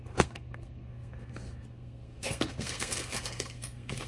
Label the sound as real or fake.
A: fake